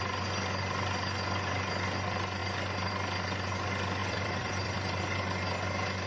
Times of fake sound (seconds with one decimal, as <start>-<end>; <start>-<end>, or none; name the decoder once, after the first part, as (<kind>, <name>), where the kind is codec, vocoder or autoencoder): 4.0-5.0 (vocoder, BigVGAN v2)